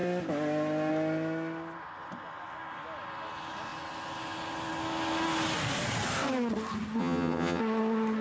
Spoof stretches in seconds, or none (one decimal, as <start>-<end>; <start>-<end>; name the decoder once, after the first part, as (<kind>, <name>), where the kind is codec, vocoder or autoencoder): 7.0-7.6 (vocoder, HiFi-GAN)